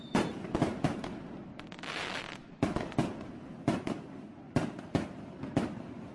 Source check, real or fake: real